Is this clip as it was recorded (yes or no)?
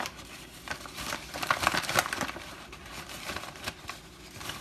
yes